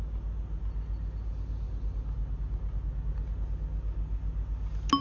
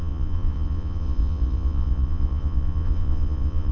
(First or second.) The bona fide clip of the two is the first